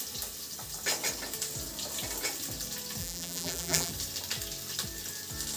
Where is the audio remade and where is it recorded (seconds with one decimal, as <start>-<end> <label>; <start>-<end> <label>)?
0.0-3.0 recorded; 3.0-3.9 remade; 3.9-5.6 recorded